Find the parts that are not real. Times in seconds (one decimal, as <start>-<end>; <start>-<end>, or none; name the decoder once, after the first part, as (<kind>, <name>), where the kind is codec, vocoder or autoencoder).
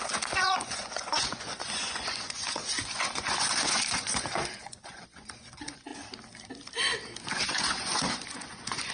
0.0-5.9 (vocoder, Vocos); 7.3-8.9